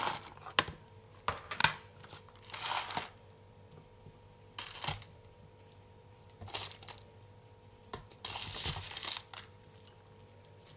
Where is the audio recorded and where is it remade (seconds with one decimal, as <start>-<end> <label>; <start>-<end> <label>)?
0.0-10.8 recorded